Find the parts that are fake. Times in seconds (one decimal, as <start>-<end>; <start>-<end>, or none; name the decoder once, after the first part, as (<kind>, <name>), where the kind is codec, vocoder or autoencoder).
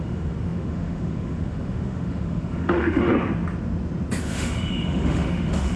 0.0-3.1 (autoencoder, DAC-VAE); 4.2-5.8